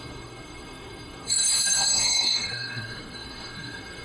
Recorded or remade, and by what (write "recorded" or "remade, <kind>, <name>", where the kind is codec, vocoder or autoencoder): remade, codec, SNAC